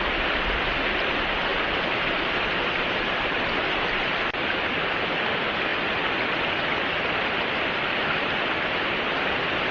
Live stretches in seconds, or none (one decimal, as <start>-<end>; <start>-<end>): 0.0-9.7